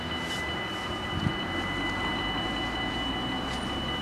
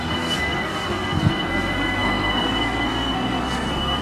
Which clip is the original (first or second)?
first